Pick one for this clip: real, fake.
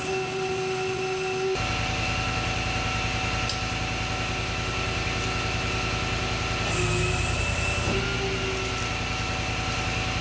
real